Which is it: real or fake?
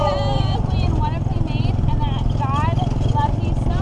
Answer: real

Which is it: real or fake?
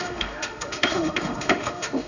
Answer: fake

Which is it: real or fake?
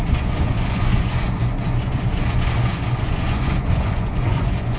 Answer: fake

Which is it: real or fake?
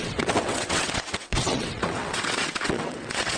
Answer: fake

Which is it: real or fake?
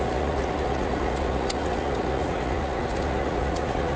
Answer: fake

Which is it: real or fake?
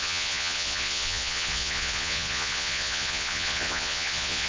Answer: fake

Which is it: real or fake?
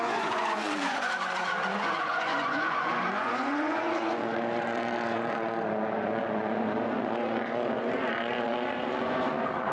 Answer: fake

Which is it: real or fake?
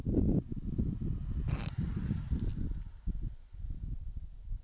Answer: real